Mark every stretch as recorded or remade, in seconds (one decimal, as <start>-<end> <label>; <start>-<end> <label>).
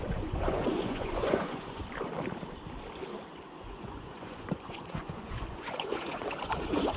0.0-1.8 remade; 1.8-3.6 recorded; 3.6-7.0 remade